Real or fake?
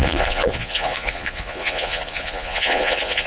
fake